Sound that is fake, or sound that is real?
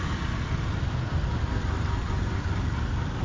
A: real